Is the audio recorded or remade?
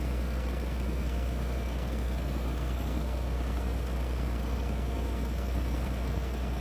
remade